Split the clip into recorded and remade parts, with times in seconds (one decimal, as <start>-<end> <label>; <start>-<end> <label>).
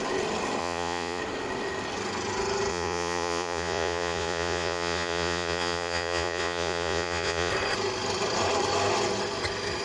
0.0-0.6 recorded; 0.6-1.2 remade; 1.2-2.7 recorded; 2.7-7.5 remade; 7.5-9.8 recorded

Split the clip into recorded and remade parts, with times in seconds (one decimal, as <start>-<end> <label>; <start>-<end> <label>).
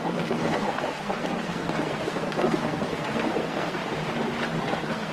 0.0-3.8 remade; 3.8-4.6 recorded; 4.6-5.1 remade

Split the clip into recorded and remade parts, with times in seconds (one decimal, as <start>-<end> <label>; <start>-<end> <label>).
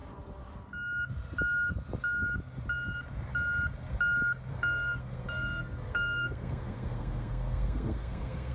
0.0-4.5 recorded; 4.5-8.5 remade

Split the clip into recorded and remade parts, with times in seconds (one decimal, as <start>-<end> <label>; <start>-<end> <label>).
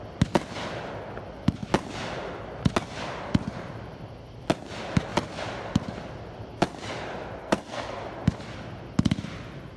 0.0-7.4 recorded; 7.4-8.0 remade; 8.0-9.8 recorded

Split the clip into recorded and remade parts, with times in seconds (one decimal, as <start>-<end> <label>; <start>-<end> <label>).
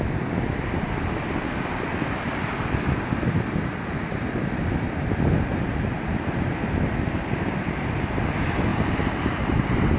0.0-8.7 recorded; 8.7-10.0 remade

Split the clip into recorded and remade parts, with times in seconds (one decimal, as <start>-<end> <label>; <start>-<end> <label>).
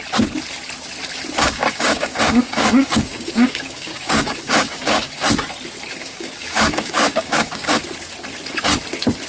0.0-1.4 recorded; 1.4-5.3 remade; 5.3-6.0 recorded; 6.0-7.8 remade; 7.8-9.3 recorded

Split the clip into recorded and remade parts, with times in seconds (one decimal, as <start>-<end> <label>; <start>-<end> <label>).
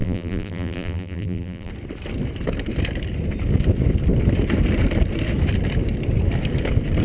0.0-1.7 remade; 1.7-7.0 recorded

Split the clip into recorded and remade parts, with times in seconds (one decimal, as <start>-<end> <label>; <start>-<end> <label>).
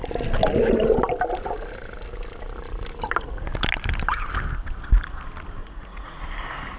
0.0-5.6 recorded; 5.6-6.2 remade; 6.2-6.8 recorded